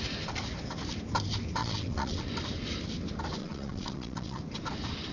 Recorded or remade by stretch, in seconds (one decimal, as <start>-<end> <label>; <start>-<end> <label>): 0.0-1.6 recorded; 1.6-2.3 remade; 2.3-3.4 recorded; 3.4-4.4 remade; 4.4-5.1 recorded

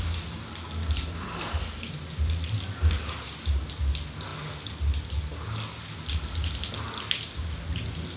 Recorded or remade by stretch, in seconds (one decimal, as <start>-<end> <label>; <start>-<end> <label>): 0.0-8.2 recorded

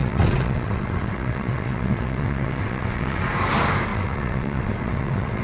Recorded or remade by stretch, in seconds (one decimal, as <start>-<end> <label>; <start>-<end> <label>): 0.0-3.2 remade; 3.2-3.9 recorded; 3.9-5.4 remade

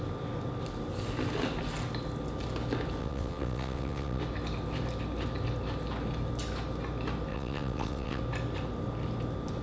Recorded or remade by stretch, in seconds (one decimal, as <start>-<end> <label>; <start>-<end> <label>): 0.0-3.0 recorded; 3.0-4.2 remade; 4.2-7.3 recorded; 7.3-8.2 remade; 8.2-9.6 recorded

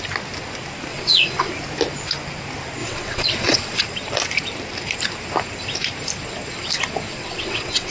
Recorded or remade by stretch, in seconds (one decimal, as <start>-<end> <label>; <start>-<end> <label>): 0.0-0.9 recorded; 0.9-1.5 remade; 1.5-2.8 recorded; 2.8-3.8 remade; 3.8-7.1 recorded; 7.1-7.9 remade